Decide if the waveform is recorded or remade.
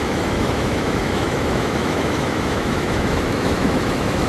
remade